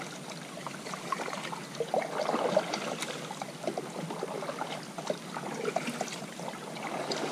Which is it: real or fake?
real